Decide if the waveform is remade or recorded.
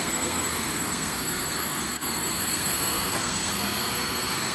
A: remade